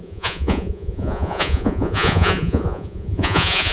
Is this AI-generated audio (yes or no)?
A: yes